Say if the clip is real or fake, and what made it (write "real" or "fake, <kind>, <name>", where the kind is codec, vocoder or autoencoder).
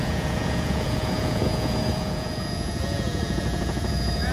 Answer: fake, vocoder, Vocos